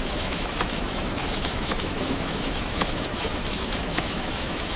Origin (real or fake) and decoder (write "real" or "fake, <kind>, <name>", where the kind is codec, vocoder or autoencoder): fake, autoencoder, DAC-VAE